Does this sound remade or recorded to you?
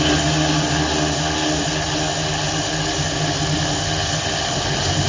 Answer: recorded